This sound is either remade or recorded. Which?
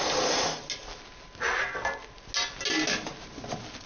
recorded